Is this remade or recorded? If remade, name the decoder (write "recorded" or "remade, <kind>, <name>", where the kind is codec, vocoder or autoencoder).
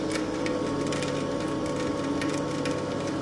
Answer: recorded